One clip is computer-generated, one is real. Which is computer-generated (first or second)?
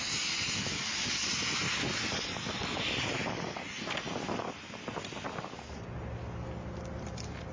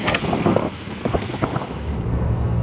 second